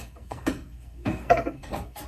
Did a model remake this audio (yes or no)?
yes